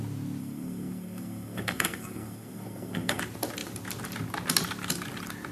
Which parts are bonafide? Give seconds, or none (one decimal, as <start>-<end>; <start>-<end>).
0.0-0.4; 3.2-5.5